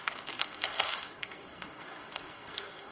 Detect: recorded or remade remade